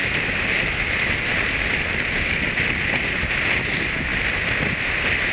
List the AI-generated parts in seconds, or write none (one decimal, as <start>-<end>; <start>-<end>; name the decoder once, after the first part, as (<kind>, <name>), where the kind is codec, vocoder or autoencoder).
none